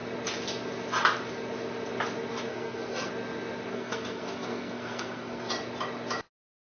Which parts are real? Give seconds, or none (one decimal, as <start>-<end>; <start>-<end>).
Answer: 0.0-2.5; 3.1-3.7; 5.5-6.6